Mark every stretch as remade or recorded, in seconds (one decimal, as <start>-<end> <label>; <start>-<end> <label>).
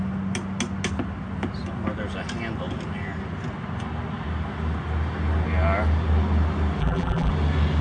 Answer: 0.0-6.8 recorded; 6.8-7.3 remade; 7.3-7.8 recorded